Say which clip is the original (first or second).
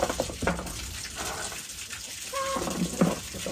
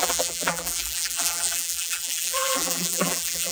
first